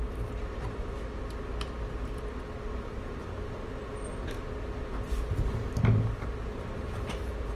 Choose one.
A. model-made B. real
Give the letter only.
B